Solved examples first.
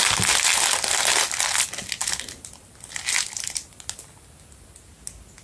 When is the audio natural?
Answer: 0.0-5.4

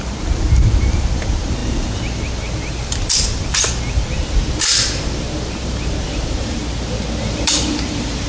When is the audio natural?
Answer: 6.6-7.2

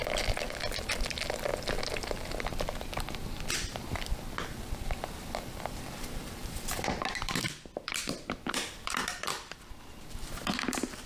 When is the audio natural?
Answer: 1.5-3.5

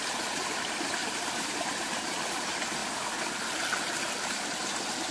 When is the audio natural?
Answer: 0.0-1.0; 2.2-5.1